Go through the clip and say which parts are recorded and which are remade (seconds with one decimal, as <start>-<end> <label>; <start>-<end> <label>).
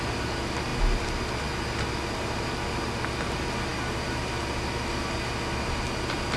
0.0-6.4 recorded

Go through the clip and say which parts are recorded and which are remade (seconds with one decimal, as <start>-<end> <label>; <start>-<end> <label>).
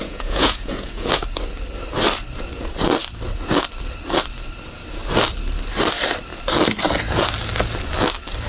0.0-1.2 remade; 1.2-8.5 recorded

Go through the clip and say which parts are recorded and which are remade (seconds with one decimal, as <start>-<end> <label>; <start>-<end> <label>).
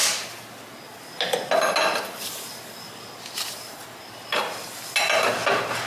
0.0-5.9 recorded